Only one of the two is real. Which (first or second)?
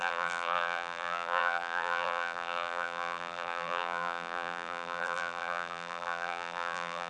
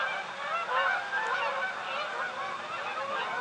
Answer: second